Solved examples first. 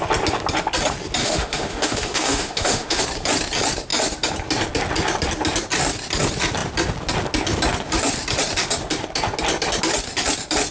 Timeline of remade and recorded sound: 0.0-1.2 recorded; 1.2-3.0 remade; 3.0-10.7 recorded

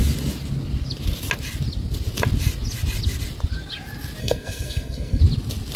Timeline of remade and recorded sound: 0.0-4.2 recorded; 4.2-5.2 remade; 5.2-5.8 recorded

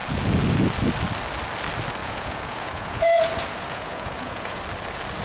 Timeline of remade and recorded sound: 0.0-2.0 recorded; 2.0-4.6 remade; 4.6-5.2 recorded

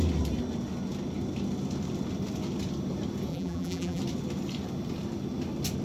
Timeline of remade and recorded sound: 0.0-3.3 recorded; 3.3-4.0 remade; 4.0-5.8 recorded

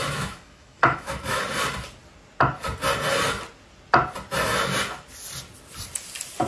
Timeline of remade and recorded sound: 0.0-1.4 remade; 1.4-6.5 recorded

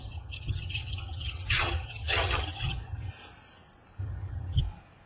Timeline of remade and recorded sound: 0.0-3.1 remade; 3.1-4.0 recorded; 4.0-4.6 remade; 4.6-5.1 recorded

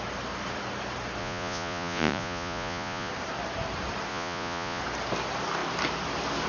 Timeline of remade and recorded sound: 0.0-1.2 recorded; 1.2-3.1 remade; 3.1-4.1 recorded; 4.1-4.8 remade; 4.8-6.5 recorded